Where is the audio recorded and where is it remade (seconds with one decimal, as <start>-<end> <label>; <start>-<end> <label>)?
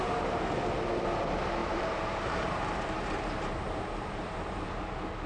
0.0-1.6 recorded; 1.6-4.8 remade; 4.8-5.3 recorded